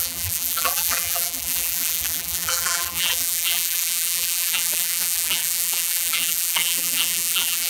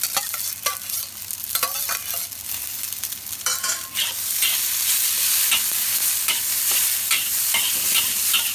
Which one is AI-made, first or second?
first